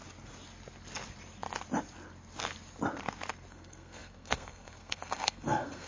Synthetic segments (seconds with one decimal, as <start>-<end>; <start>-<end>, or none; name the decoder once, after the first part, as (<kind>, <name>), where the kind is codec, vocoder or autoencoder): 3.5-5.9 (codec, SNAC)